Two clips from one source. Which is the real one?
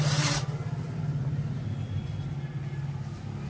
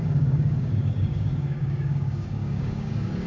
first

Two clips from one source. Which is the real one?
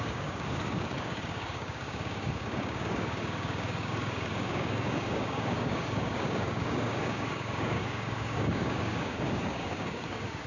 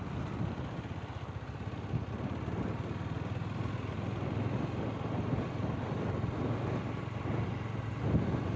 second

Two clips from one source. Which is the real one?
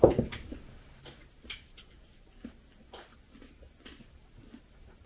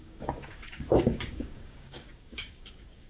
first